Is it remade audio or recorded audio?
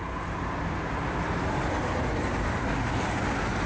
recorded